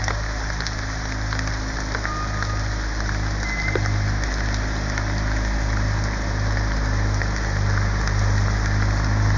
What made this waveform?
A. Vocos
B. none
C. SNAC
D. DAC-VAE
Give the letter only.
B